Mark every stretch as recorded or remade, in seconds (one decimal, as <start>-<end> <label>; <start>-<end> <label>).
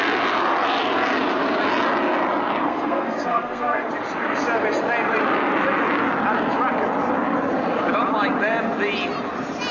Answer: 0.0-2.6 recorded; 2.6-3.9 remade; 3.9-9.7 recorded